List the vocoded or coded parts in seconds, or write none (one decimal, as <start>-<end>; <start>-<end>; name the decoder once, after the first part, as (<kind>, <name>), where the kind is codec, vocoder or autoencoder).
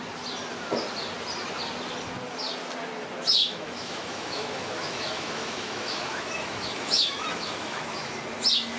3.4-8.2 (autoencoder, DAC-VAE)